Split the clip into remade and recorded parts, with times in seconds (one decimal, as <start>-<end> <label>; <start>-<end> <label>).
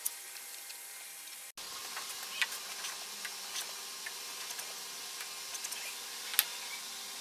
0.0-7.2 recorded